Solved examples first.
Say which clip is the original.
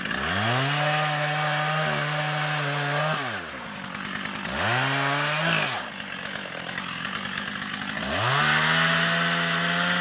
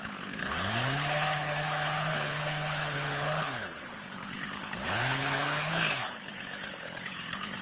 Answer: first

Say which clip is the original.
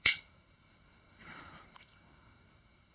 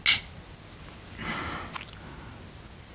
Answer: second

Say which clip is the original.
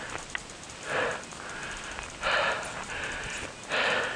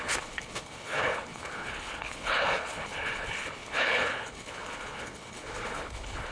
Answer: first